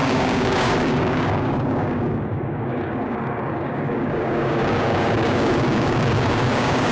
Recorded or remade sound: remade